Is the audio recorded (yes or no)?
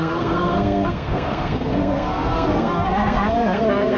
no